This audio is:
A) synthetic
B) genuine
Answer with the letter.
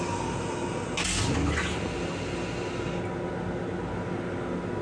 B